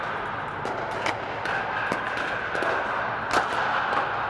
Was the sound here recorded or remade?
recorded